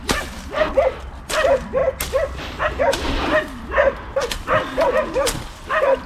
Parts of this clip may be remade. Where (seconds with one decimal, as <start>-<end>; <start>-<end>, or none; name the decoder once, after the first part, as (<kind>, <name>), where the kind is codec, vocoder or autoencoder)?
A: none